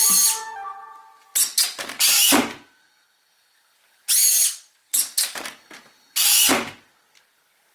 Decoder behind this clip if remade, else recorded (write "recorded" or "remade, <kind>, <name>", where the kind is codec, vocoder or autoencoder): recorded